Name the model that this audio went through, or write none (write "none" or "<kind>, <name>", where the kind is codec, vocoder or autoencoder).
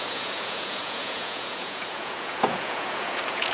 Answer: vocoder, Vocos